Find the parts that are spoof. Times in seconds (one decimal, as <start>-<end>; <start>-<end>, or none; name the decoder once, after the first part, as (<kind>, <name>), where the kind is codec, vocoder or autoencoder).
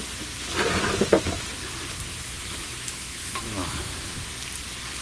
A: 2.1-4.3 (autoencoder, DAC-VAE)